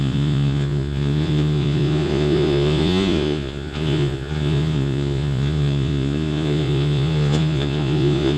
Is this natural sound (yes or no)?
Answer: no